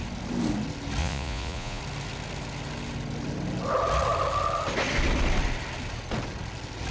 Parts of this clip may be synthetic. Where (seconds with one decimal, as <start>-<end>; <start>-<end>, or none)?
1.0-1.8